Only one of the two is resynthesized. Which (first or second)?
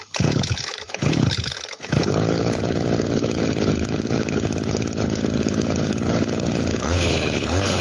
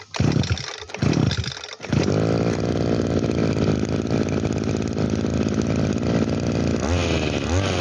first